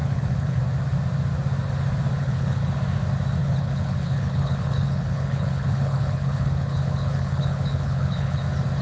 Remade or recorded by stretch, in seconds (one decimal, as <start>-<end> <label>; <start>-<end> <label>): 0.0-0.6 remade; 0.6-2.2 recorded; 2.2-2.8 remade; 2.8-3.4 recorded; 3.4-8.4 remade; 8.4-8.8 recorded